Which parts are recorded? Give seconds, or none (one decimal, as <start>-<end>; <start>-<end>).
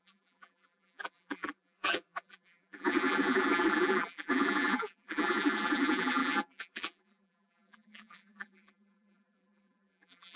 none